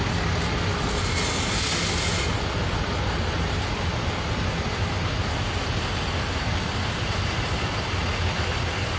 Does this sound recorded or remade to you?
recorded